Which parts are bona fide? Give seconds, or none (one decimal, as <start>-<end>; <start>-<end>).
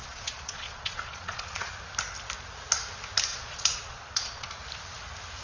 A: 1.7-3.3; 4.5-5.4